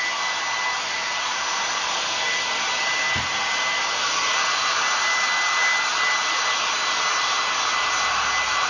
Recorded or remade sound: recorded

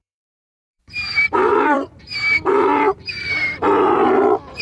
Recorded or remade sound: remade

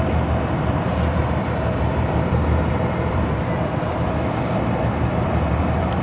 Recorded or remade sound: remade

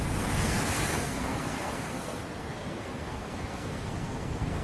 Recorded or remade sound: remade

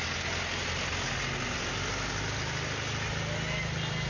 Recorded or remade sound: recorded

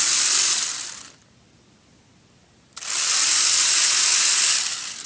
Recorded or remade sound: recorded